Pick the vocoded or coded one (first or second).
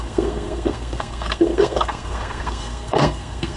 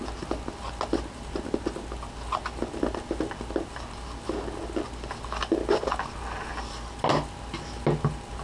first